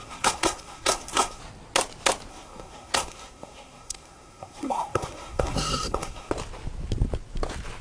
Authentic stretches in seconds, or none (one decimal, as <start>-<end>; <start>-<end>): 1.4-2.3; 6.3-7.8